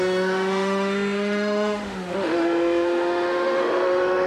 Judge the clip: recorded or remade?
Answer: remade